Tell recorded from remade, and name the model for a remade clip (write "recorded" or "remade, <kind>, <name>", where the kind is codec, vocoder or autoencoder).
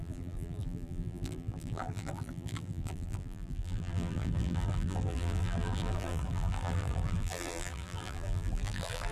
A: remade, vocoder, BigVGAN v2